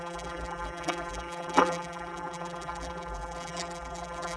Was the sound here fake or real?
fake